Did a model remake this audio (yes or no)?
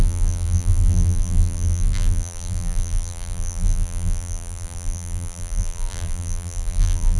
yes